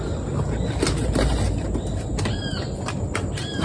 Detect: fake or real real